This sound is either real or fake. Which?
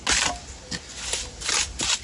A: real